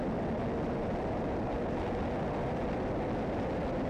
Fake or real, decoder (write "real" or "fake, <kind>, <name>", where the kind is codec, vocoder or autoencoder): real